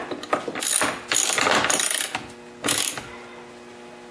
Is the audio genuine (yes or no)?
yes